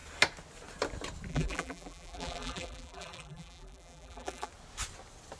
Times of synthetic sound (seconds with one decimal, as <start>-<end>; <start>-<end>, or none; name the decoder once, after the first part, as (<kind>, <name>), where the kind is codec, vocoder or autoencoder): 1.3-4.5 (vocoder, BigVGAN v2)